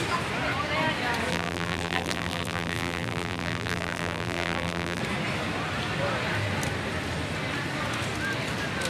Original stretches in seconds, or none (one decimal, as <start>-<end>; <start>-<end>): 0.0-1.3; 5.0-8.9